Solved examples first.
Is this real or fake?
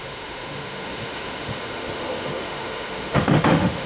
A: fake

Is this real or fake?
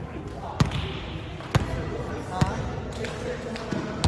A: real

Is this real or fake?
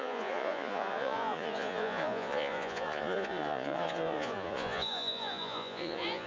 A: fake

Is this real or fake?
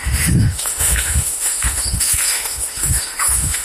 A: fake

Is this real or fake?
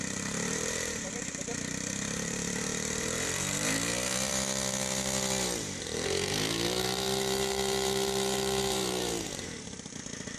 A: fake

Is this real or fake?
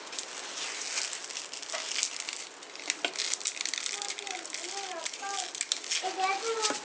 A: real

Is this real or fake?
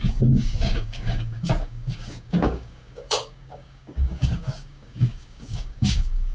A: fake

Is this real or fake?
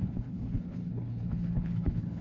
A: fake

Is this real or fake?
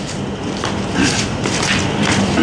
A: fake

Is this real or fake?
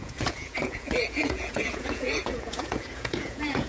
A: fake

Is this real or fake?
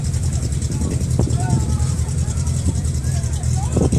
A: fake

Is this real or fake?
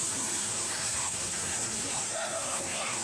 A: fake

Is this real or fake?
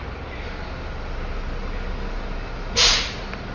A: real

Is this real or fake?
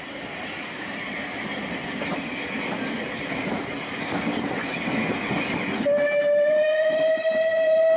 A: real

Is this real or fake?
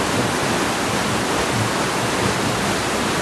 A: real